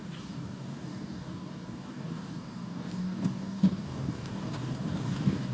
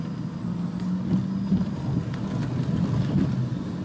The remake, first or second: first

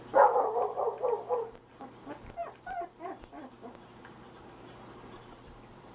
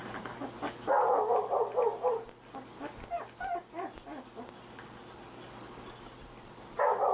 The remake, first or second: first